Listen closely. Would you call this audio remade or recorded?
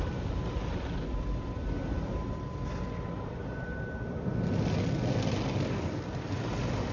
recorded